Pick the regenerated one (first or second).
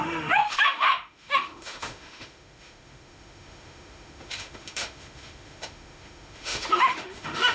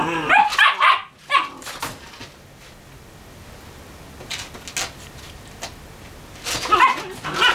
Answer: first